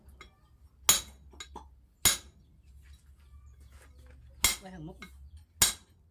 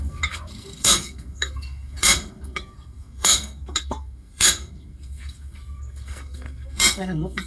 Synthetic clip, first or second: second